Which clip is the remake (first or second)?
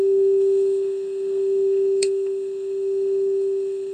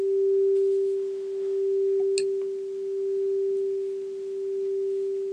first